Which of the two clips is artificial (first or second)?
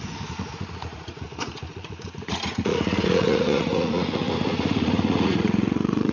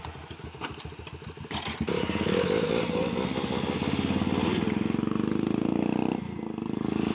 first